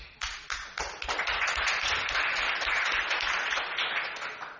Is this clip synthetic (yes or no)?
no